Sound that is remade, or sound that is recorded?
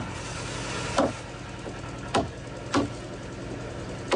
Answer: recorded